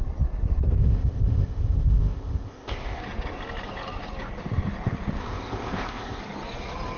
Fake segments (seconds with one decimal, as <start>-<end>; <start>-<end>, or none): 0.8-3.0; 5.2-6.2